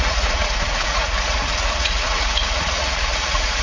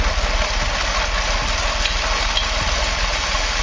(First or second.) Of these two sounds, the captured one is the second